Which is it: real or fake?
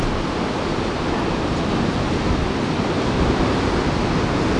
real